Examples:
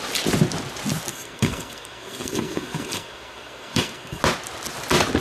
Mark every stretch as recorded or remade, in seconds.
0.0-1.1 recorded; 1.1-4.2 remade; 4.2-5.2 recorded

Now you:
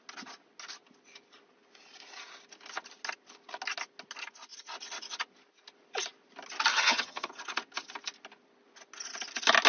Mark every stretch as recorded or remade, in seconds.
0.0-6.7 recorded; 6.7-7.3 remade; 7.3-9.7 recorded